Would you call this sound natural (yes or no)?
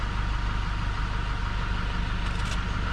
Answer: yes